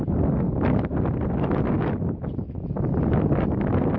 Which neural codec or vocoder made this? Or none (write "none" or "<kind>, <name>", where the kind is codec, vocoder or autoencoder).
none